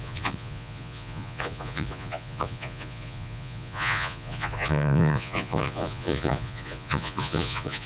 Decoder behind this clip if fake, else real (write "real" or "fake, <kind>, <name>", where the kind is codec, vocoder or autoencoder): fake, vocoder, Vocos